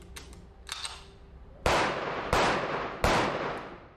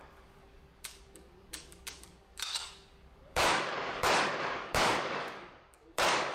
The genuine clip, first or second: first